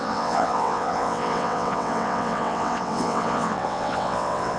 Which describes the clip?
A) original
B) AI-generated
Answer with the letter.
B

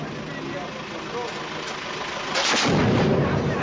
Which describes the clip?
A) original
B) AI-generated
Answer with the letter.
A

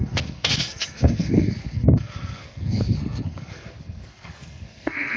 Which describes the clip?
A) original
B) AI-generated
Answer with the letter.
B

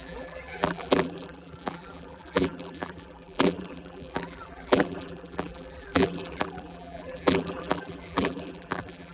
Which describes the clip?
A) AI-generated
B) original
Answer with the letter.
A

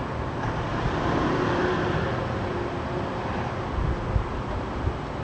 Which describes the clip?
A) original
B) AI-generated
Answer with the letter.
A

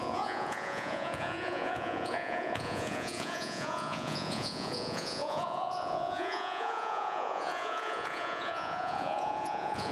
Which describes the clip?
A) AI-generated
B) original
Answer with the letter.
A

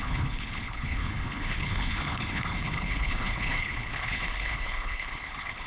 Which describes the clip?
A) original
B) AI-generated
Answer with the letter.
B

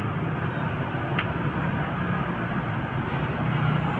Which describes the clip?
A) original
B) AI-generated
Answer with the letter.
A